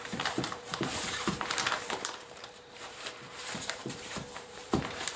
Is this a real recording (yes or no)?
no